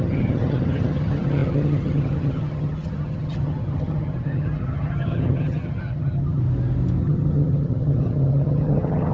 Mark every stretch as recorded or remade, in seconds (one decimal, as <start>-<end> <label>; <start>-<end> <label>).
0.0-6.4 remade; 6.4-7.0 recorded; 7.0-9.1 remade